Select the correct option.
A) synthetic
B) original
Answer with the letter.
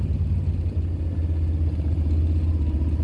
B